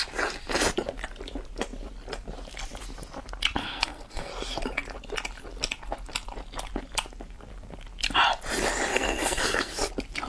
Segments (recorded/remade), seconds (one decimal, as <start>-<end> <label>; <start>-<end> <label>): 0.0-3.6 recorded; 3.6-4.3 remade; 4.3-8.9 recorded; 8.9-9.9 remade; 9.9-10.3 recorded